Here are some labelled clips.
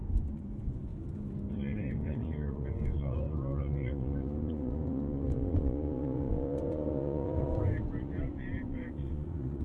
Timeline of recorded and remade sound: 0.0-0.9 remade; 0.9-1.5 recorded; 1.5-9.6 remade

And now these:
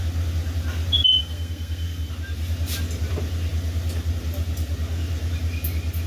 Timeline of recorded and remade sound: 0.0-1.2 recorded; 1.2-2.1 remade; 2.1-6.1 recorded

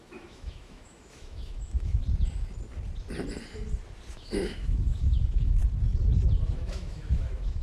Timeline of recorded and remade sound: 0.0-2.0 remade; 2.0-4.1 recorded; 4.1-5.6 remade; 5.6-6.5 recorded; 6.5-7.6 remade